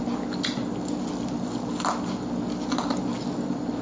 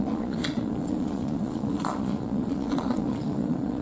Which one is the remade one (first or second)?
second